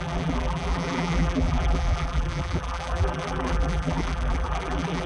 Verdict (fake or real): fake